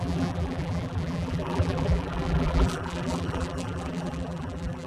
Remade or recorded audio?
remade